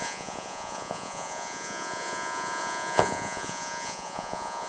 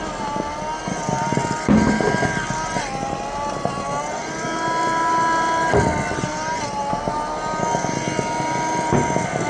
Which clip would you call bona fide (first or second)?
second